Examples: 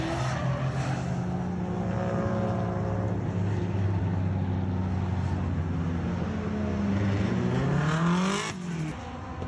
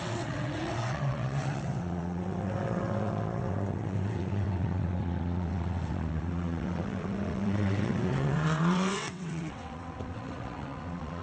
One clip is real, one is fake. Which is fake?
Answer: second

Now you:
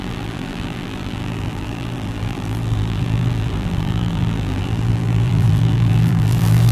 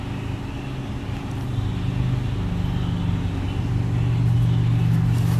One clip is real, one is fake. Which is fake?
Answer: first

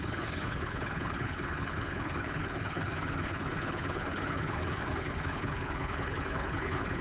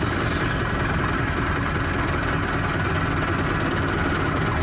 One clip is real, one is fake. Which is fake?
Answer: first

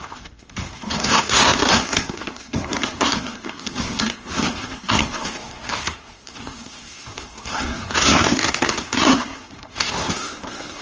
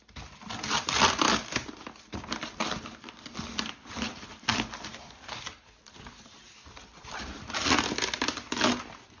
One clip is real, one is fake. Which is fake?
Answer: first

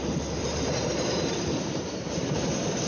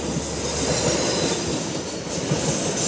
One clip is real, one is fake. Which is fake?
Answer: first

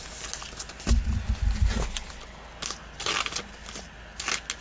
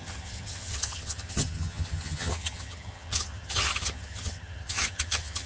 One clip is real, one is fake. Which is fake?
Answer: second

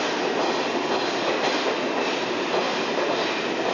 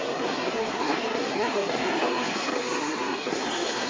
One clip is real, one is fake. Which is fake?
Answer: second